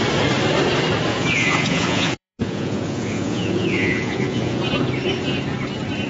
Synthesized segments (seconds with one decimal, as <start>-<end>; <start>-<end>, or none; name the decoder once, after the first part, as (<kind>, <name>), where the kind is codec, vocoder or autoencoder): 1.1-4.6 (vocoder, Vocos)